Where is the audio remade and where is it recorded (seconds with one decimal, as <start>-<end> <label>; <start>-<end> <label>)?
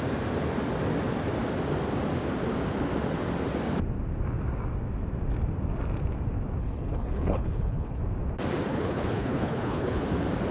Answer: 0.0-6.6 recorded; 6.6-8.0 remade; 8.0-8.7 recorded; 8.7-10.0 remade; 10.0-10.5 recorded